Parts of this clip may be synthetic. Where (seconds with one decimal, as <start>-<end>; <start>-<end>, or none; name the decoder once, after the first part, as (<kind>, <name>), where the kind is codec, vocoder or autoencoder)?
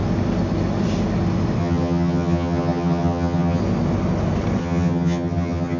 1.6-3.6 (vocoder, HiFi-GAN); 4.6-5.8